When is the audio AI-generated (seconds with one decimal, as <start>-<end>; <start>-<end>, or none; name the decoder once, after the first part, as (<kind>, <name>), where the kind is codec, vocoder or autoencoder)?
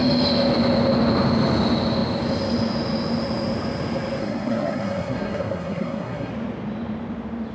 4.2-6.3 (codec, SNAC)